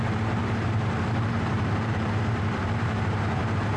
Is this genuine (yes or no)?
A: no